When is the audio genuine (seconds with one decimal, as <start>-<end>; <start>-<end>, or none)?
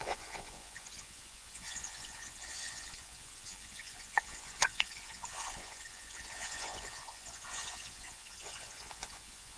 none